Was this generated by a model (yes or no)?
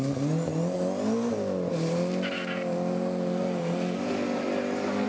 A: no